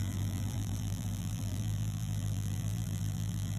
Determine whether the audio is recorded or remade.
remade